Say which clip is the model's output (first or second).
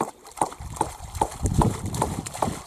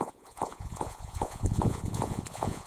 second